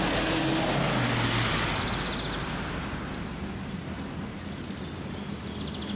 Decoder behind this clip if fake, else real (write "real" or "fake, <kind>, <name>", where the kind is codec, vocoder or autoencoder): real